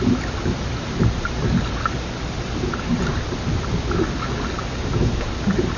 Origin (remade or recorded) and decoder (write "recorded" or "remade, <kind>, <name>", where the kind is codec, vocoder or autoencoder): recorded